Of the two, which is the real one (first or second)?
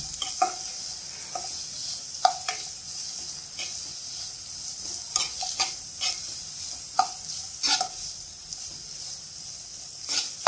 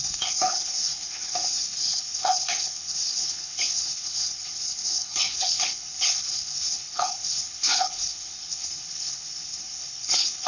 first